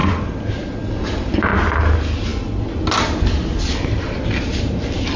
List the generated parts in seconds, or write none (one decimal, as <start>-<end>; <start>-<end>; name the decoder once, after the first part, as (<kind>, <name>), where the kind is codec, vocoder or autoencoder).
none